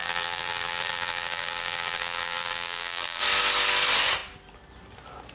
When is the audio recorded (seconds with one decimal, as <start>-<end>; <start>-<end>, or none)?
3.2-5.3